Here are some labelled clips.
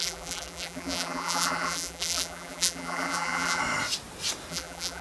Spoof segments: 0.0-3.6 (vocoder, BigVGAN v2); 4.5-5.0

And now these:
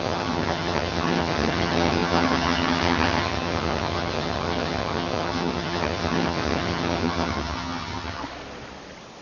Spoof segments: 0.0-8.2 (vocoder, HiFi-GAN)

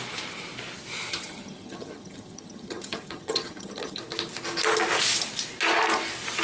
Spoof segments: 1.1-4.0 (vocoder, HiFi-GAN)